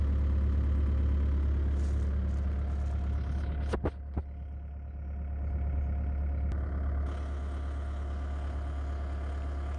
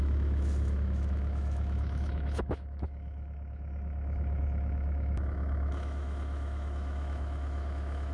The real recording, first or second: first